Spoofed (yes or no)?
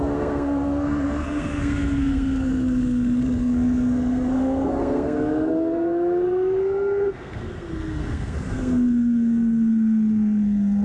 yes